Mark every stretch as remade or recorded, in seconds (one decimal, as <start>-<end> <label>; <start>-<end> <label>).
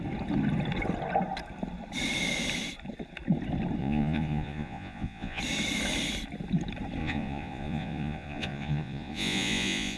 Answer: 0.0-3.8 recorded; 3.8-5.4 remade; 5.4-7.0 recorded; 7.0-10.0 remade